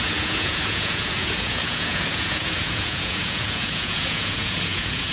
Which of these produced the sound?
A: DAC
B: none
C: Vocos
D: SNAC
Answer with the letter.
C